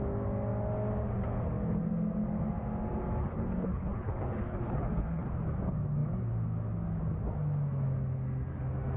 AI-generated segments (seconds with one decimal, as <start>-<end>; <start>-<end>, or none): 3.2-5.3

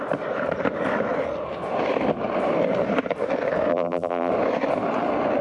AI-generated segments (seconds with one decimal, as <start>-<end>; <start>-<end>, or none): 3.7-4.3

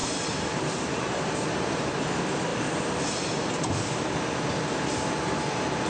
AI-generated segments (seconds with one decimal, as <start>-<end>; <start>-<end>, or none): 0.0-1.9; 2.5-5.9

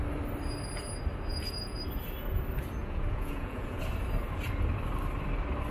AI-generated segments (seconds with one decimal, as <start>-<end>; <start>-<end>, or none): 1.3-1.8; 2.8-3.8

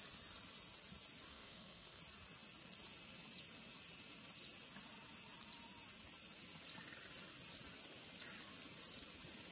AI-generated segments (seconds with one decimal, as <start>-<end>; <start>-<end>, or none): 1.3-2.0

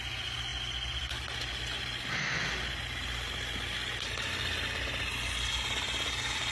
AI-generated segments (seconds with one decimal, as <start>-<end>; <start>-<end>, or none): none

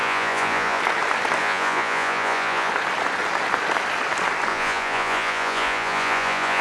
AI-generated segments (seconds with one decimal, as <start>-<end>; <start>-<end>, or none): 0.0-0.8; 1.4-2.7; 4.5-6.6